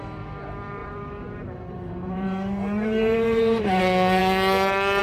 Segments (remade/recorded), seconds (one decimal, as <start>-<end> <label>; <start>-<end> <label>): 0.0-0.8 recorded; 0.8-3.8 remade; 3.8-5.0 recorded